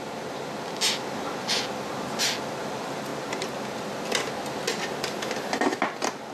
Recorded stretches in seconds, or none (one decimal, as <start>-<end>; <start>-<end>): 0.0-6.3